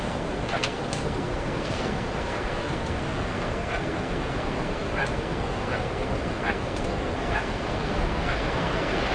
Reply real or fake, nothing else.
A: fake